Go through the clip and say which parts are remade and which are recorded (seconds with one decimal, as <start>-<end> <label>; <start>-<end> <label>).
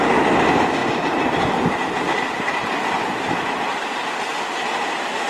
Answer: 0.0-5.3 recorded